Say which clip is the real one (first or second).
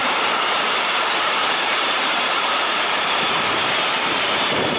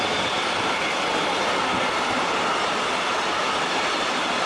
second